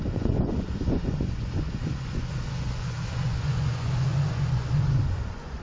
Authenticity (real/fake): fake